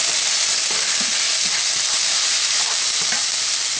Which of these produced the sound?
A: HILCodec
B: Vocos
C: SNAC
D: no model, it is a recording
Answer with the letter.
D